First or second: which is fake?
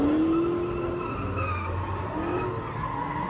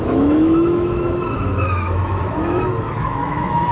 second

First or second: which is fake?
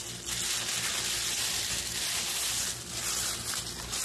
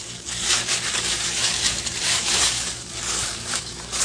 second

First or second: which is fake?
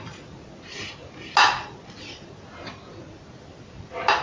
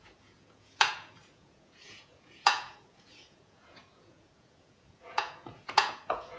second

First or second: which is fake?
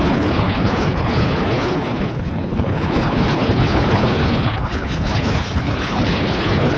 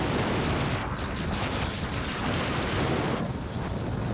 first